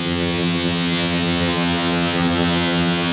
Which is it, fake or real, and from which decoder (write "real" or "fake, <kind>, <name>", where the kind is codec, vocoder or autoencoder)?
fake, vocoder, HiFi-GAN